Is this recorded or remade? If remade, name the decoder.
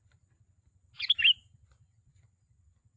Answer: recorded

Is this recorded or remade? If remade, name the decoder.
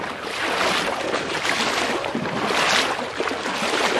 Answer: recorded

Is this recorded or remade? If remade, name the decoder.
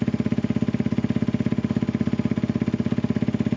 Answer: recorded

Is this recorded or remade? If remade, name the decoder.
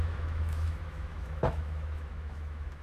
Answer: remade, autoencoder, DAC-VAE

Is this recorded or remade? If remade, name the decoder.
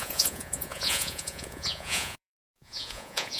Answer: remade, vocoder, Vocos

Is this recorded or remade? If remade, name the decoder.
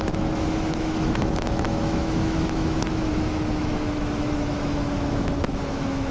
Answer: remade, autoencoder, DAC-VAE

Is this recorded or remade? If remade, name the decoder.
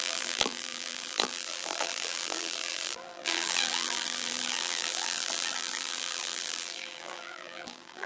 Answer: remade, vocoder, BigVGAN v2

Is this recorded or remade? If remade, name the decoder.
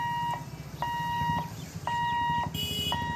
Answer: recorded